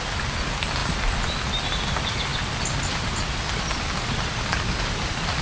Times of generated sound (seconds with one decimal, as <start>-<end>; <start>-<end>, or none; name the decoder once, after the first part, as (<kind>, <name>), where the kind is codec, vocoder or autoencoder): none